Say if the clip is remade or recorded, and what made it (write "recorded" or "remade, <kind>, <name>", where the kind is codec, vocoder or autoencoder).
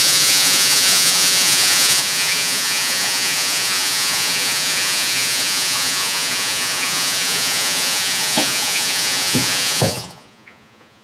remade, vocoder, Vocos